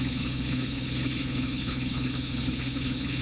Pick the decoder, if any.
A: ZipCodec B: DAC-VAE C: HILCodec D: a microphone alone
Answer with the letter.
C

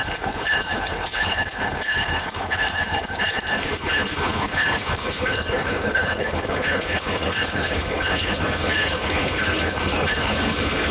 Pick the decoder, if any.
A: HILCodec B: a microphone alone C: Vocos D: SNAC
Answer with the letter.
A